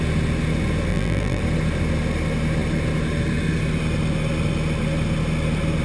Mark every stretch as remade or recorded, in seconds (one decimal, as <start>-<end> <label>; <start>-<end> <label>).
0.0-0.9 recorded; 0.9-1.4 remade; 1.4-5.8 recorded